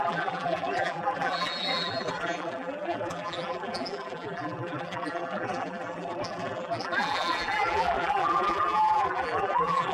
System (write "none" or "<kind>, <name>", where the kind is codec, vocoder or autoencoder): vocoder, BigVGAN v2